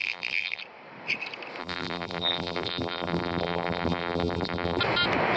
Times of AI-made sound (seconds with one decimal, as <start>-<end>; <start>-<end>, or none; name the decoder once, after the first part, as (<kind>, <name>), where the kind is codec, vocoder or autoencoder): 0.0-0.6 (vocoder, BigVGAN v2); 1.6-4.8